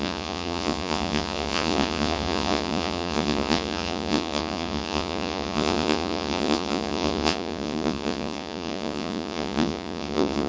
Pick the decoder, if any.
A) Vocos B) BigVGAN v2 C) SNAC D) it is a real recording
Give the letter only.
A